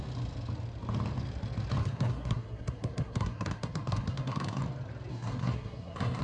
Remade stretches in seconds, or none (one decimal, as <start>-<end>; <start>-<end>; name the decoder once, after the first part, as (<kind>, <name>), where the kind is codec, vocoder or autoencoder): 1.8-4.6 (codec, SNAC); 5.1-6.2